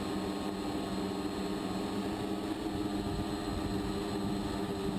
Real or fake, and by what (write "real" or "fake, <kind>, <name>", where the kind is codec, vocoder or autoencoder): real